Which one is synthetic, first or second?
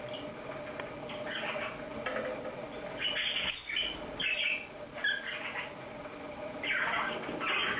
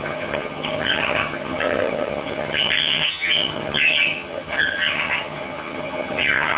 second